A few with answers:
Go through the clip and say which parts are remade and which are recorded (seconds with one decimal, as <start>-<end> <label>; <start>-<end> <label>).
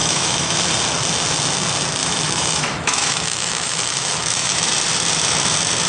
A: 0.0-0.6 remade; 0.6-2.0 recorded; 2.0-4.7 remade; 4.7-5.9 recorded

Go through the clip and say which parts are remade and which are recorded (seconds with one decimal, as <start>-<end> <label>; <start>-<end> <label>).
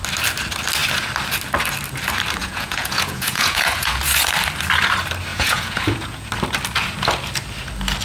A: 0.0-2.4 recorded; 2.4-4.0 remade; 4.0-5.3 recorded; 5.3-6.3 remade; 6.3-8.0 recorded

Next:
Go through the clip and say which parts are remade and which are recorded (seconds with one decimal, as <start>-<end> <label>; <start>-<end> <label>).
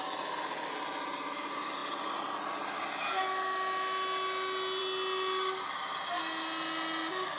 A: 0.0-7.4 recorded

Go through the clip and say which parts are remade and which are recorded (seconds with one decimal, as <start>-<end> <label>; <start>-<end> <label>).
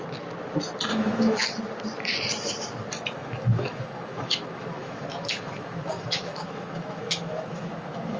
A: 0.0-0.9 recorded; 0.9-1.4 remade; 1.4-3.2 recorded; 3.2-8.2 remade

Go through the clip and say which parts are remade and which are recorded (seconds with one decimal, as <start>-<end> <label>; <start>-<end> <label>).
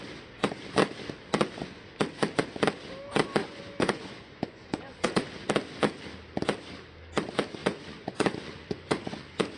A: 0.0-3.4 recorded; 3.4-5.3 remade; 5.3-7.6 recorded; 7.6-9.6 remade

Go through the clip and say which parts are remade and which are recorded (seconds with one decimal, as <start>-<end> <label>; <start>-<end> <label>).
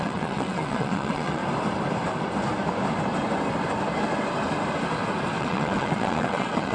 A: 0.0-1.4 remade; 1.4-5.4 recorded; 5.4-6.7 remade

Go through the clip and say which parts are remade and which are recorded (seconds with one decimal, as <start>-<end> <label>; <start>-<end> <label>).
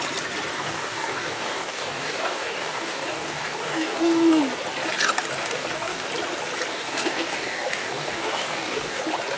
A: 0.0-0.5 recorded; 0.5-4.4 remade; 4.4-5.4 recorded; 5.4-6.1 remade; 6.1-6.7 recorded; 6.7-9.0 remade; 9.0-9.4 recorded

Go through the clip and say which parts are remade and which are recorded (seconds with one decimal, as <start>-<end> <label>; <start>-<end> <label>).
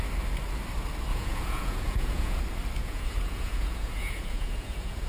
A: 0.0-1.1 recorded; 1.1-2.4 remade; 2.4-2.8 recorded; 2.8-5.1 remade